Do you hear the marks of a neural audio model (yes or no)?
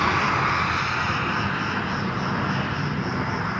no